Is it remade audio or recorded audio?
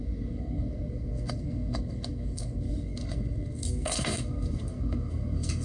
remade